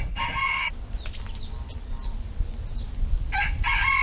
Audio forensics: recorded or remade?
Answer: recorded